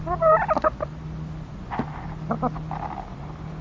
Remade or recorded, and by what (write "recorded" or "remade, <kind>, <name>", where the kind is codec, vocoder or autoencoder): recorded